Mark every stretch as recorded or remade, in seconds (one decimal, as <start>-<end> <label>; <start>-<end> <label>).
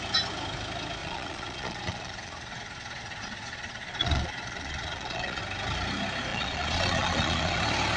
0.0-1.0 recorded; 1.0-5.4 remade; 5.4-6.3 recorded; 6.3-7.6 remade; 7.6-8.0 recorded